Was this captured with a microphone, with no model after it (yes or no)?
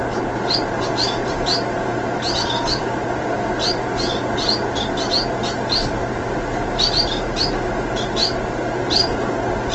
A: yes